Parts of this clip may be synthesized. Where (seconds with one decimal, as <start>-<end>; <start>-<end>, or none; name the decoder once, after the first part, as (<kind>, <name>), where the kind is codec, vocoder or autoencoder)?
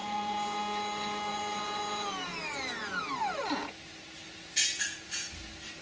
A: 0.0-0.6 (vocoder, Vocos); 1.3-3.0; 4.6-5.3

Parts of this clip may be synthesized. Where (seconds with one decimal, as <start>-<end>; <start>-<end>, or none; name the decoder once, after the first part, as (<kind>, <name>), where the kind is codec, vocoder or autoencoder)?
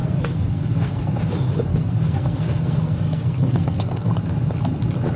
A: 0.0-1.1 (codec, SNAC); 1.7-4.1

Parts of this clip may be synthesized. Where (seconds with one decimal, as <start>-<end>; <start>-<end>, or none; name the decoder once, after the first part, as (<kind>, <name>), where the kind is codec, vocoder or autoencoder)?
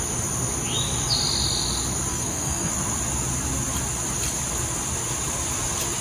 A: 2.1-2.7 (codec, SNAC)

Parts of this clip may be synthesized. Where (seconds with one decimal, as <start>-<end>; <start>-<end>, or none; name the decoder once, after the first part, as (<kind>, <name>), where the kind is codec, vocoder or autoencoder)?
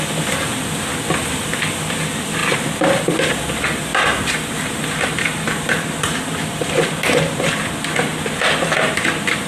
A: 3.9-7.4 (vocoder, BigVGAN v2)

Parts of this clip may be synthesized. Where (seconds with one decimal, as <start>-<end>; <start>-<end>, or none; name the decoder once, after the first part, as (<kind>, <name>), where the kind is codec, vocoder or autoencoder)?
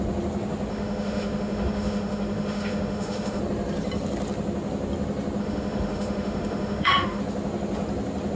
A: 0.7-3.4 (autoencoder, DAC-VAE); 5.4-7.2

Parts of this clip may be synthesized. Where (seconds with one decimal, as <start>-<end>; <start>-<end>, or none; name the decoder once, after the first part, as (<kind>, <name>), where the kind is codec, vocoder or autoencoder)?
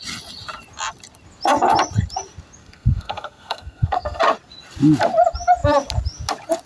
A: 2.6-4.2 (codec, SNAC)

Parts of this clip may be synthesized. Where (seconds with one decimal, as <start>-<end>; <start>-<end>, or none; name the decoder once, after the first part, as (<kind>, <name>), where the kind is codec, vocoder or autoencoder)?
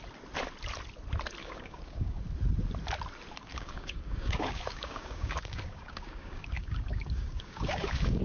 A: 1.4-2.2 (codec, DAC); 3.5-8.2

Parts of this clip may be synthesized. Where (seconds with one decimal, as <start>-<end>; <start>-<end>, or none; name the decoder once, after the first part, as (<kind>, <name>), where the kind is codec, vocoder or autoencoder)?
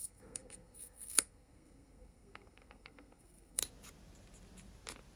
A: 0.0-3.6 (codec, SNAC)